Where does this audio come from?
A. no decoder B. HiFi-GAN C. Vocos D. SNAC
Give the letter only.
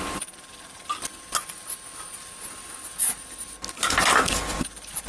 A